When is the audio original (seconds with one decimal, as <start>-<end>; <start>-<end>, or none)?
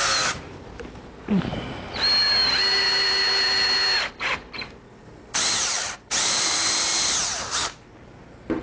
0.0-8.6